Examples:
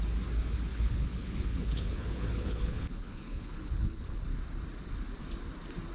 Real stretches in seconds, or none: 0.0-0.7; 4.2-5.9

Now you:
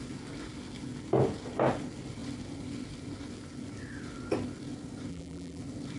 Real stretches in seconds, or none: 0.0-5.1; 5.6-6.0

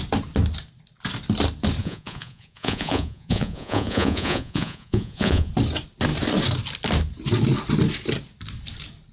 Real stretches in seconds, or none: 0.0-1.8; 5.5-9.1

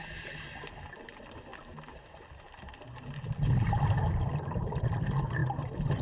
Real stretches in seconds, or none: 0.0-6.0

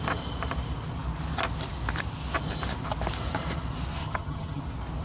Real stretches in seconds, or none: 0.0-4.0; 4.6-5.0

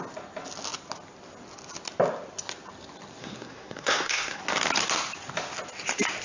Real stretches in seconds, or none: 0.0-3.2; 4.4-6.2